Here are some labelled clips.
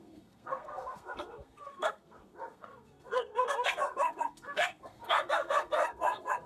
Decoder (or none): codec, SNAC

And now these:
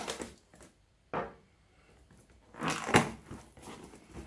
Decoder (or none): none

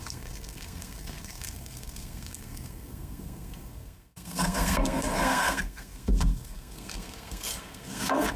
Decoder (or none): codec, SNAC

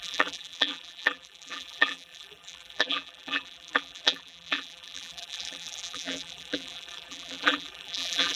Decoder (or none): vocoder, BigVGAN v2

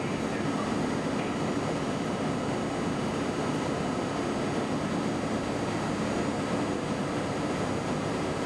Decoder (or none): none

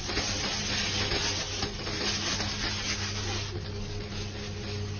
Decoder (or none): none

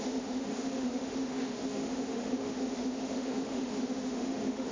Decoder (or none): autoencoder, DAC-VAE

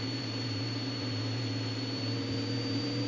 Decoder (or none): vocoder, BigVGAN v2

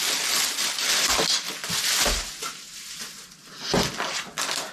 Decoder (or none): none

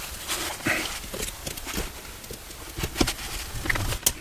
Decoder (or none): none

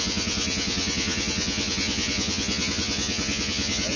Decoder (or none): vocoder, Vocos